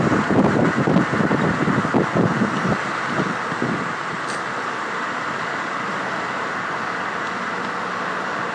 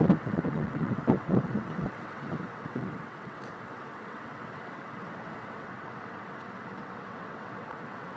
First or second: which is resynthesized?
second